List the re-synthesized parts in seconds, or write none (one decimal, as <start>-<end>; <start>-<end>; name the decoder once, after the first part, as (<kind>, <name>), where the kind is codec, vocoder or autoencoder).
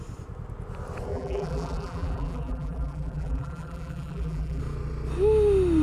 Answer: 1.1-4.6 (vocoder, BigVGAN v2)